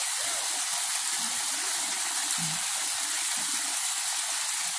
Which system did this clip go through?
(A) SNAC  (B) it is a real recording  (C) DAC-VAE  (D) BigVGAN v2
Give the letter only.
B